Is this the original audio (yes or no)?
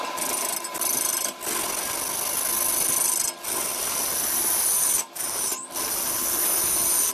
yes